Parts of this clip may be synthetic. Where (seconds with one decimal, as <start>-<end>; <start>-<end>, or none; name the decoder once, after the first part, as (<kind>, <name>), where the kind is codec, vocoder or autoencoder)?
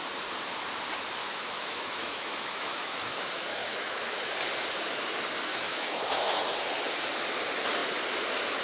1.2-4.2 (autoencoder, DAC-VAE); 5.5-6.4